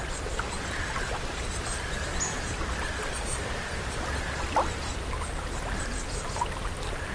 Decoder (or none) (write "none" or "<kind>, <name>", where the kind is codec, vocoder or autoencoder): none